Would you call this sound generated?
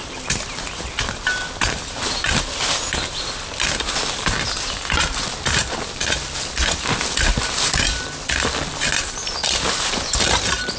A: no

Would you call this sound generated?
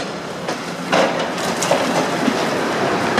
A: no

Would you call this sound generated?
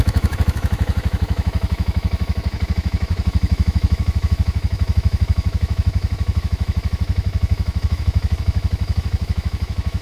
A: yes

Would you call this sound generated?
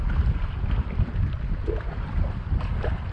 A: no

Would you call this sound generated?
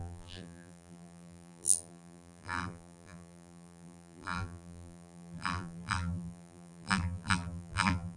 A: yes